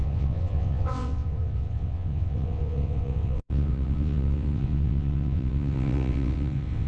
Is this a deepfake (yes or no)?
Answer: yes